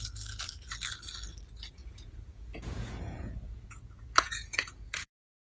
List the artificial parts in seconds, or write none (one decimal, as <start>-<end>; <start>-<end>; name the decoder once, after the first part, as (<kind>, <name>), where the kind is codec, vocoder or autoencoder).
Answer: 1.8-5.1 (vocoder, Vocos)